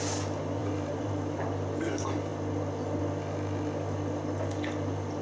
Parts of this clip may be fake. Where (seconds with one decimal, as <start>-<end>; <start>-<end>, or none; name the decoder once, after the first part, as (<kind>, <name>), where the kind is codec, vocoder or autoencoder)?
0.6-1.1 (vocoder, BigVGAN v2)